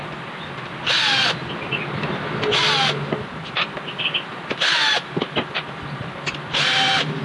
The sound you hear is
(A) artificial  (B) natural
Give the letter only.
B